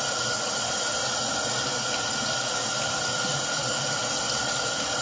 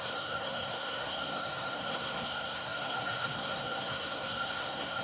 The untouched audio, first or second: first